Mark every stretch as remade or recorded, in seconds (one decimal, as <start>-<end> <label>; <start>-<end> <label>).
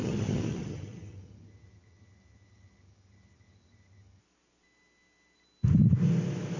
0.0-4.2 remade; 4.2-6.6 recorded